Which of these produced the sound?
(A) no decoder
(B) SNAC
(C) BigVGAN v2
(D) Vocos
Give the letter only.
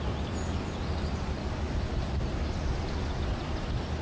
A